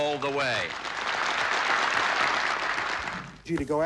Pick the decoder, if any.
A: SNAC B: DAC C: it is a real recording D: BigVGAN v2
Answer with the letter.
C